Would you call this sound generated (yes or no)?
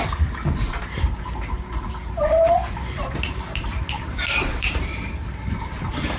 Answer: yes